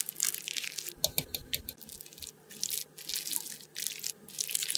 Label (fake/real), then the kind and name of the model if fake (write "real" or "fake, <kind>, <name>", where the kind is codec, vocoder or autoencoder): real